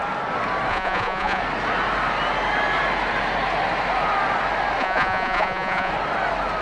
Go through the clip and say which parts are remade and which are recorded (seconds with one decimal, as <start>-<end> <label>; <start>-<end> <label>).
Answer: 0.0-0.7 recorded; 0.7-1.4 remade; 1.4-4.8 recorded; 4.8-5.9 remade; 5.9-6.6 recorded

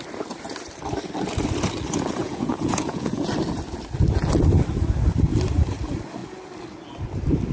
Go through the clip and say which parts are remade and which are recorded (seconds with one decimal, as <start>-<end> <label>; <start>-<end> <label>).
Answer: 0.0-2.2 recorded; 2.2-3.3 remade; 3.3-7.5 recorded

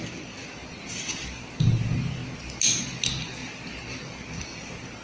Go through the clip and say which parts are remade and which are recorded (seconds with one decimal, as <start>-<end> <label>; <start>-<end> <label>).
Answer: 0.0-5.0 recorded

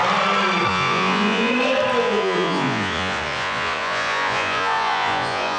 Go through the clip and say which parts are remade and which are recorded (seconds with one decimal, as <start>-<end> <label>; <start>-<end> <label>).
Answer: 0.0-0.7 recorded; 0.7-1.5 remade; 1.5-2.0 recorded; 2.0-5.6 remade

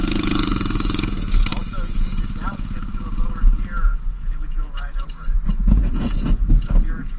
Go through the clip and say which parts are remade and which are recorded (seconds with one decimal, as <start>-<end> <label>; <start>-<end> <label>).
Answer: 0.0-7.2 remade

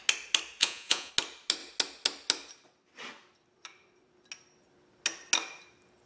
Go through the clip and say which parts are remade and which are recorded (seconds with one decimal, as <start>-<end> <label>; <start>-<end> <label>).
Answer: 0.0-0.6 recorded; 0.6-1.1 remade; 1.1-6.1 recorded